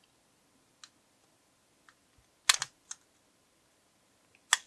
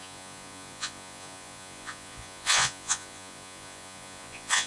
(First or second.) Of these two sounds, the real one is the first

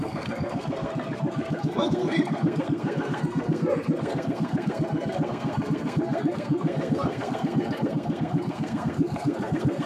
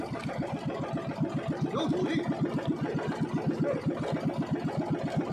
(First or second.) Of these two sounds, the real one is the second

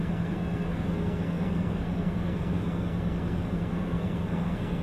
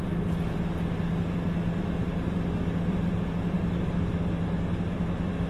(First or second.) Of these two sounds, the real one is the second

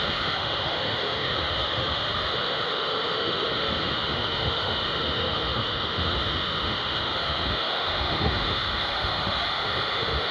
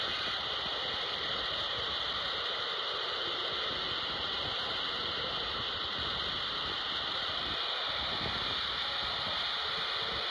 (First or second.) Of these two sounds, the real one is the second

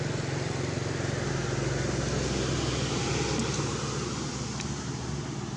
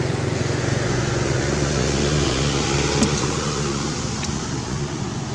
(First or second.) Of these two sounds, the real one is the first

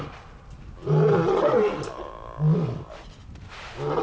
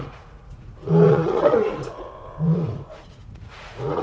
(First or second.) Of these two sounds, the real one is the first